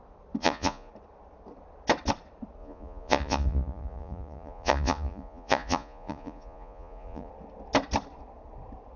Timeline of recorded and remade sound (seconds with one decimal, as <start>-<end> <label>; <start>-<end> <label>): 0.0-0.4 recorded; 0.4-0.9 remade; 0.9-2.6 recorded; 2.6-7.3 remade; 7.3-9.0 recorded